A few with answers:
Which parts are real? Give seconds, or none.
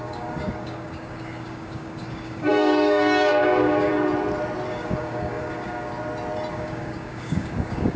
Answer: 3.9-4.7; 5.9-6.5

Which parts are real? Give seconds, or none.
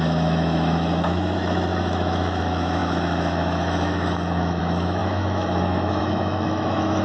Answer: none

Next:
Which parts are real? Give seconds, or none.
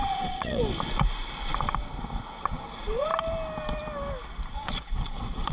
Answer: 0.6-2.4; 3.1-4.5